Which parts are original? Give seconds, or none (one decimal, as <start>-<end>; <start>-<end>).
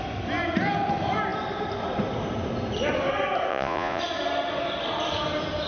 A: 0.0-3.5; 4.0-5.7